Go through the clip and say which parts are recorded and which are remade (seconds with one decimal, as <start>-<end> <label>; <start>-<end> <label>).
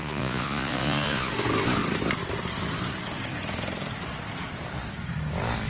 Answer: 0.0-1.3 remade; 1.3-5.7 recorded